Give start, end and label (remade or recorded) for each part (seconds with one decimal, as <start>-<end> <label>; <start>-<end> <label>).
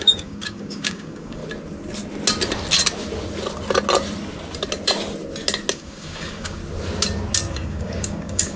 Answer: 0.0-1.4 remade; 1.4-5.7 recorded; 5.7-6.6 remade; 6.6-7.5 recorded; 7.5-8.6 remade